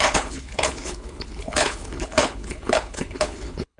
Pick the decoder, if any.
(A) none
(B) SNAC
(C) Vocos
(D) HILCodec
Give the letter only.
D